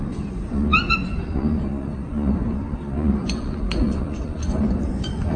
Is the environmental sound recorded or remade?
remade